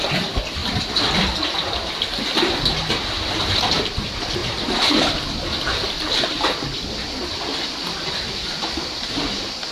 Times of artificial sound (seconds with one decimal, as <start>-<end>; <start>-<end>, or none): 0.6-1.9; 4.4-8.1